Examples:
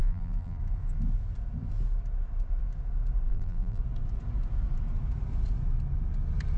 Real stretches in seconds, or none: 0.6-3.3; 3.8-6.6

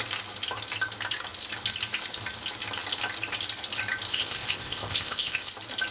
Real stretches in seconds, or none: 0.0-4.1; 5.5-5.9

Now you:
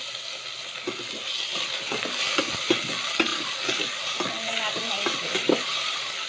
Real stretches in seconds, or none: 0.0-6.3

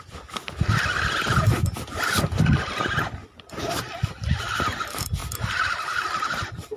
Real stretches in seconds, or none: 0.0-6.8

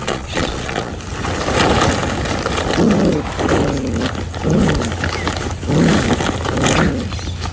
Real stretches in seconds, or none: 0.9-7.5

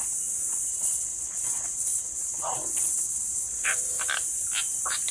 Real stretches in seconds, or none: 0.0-0.7; 3.8-5.1

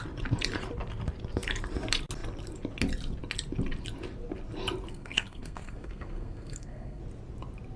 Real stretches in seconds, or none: 0.0-4.9; 7.0-7.8

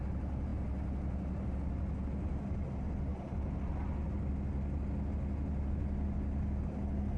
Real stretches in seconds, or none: 0.0-7.2